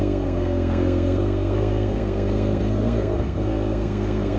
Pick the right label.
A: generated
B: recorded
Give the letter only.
A